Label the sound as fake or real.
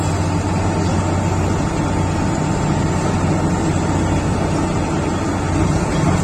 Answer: real